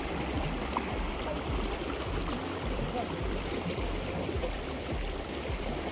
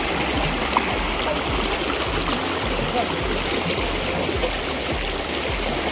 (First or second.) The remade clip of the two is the first